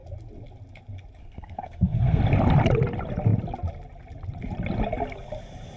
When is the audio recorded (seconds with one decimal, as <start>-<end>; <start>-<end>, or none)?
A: 0.0-1.2; 2.2-5.8